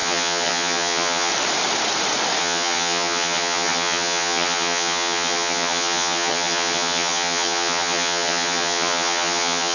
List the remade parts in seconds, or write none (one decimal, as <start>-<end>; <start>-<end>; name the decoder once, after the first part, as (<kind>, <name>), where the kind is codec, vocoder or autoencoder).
0.0-1.3 (vocoder, HiFi-GAN); 2.4-9.7

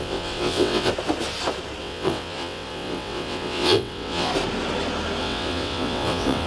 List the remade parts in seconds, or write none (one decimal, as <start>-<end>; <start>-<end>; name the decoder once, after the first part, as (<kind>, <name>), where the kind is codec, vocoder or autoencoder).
0.0-0.9 (vocoder, WaveNeXt); 1.8-4.3; 5.2-6.5